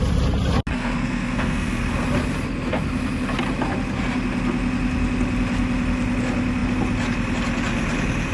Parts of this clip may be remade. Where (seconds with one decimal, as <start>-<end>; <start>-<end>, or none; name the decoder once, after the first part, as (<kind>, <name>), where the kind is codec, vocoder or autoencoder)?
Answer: 0.7-1.8 (codec, SNAC)